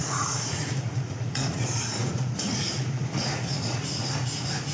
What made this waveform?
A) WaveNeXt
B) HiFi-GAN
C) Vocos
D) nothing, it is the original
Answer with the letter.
C